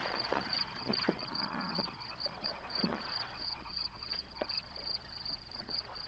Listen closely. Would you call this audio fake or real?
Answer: fake